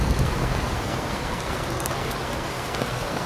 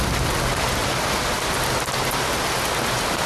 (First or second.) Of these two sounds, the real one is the second